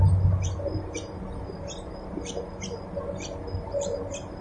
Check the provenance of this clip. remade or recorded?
recorded